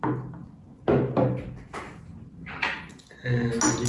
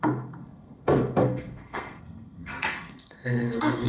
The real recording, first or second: first